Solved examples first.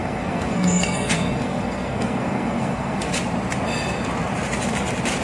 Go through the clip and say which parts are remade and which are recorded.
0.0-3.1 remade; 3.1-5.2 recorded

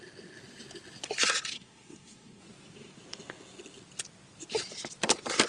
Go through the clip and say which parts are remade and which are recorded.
0.0-1.5 recorded; 1.5-2.4 remade; 2.4-5.5 recorded

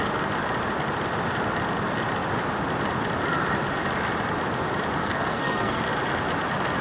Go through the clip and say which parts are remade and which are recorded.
0.0-5.0 recorded; 5.0-5.8 remade; 5.8-6.8 recorded

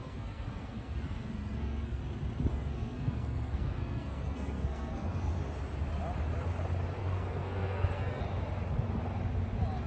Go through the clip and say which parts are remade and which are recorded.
0.0-2.0 remade; 2.0-2.5 recorded; 2.5-5.3 remade; 5.3-7.0 recorded; 7.0-8.2 remade; 8.2-9.9 recorded

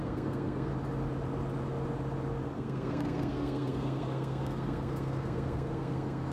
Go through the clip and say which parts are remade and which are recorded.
0.0-0.7 remade; 0.7-2.4 recorded; 2.4-6.3 remade